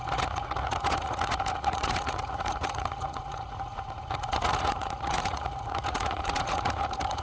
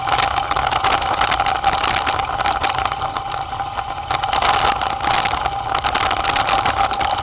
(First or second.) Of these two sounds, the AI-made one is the first